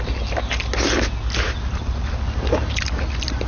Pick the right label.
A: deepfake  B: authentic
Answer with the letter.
B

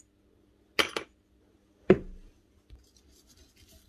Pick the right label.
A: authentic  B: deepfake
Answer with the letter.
A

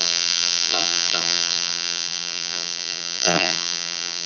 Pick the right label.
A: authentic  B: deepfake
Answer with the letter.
B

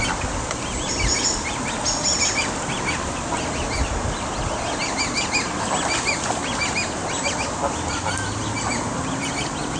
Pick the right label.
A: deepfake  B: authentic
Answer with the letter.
B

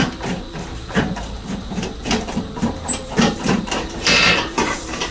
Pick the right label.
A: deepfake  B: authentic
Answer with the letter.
A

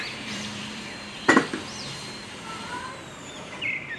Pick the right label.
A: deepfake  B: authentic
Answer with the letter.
A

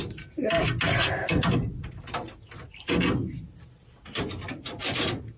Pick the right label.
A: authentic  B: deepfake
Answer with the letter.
A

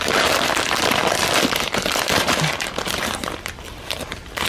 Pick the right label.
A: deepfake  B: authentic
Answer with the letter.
A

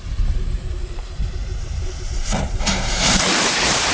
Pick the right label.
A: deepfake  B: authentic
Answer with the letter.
A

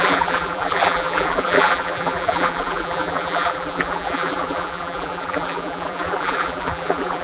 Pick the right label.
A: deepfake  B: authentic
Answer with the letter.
A